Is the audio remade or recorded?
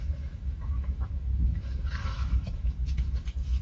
remade